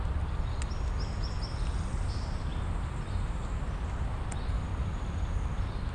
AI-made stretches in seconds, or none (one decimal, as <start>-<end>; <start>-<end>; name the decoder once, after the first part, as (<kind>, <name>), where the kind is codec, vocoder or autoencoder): 4.7-5.9 (vocoder, BigVGAN v2)